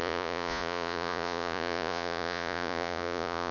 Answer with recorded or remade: remade